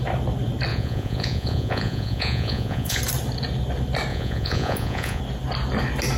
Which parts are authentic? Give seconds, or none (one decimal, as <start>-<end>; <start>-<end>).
0.0-0.7; 3.0-4.1; 5.2-6.2